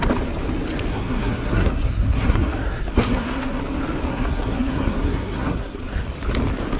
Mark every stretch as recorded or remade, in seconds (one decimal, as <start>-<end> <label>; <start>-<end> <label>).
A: 0.0-0.9 recorded; 0.9-3.6 remade; 3.6-4.1 recorded; 4.1-5.8 remade; 5.8-6.8 recorded